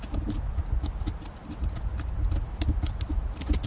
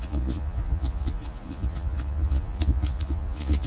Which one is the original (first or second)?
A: first